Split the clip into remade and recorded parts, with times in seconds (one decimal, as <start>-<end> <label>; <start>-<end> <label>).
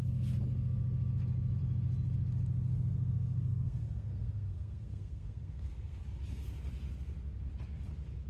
0.0-2.7 recorded; 2.7-6.0 remade; 6.0-8.3 recorded